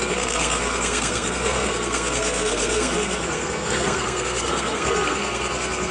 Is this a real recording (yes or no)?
no